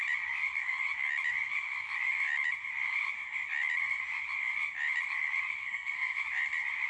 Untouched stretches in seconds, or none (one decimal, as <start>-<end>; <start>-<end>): 0.0-5.6; 6.2-6.9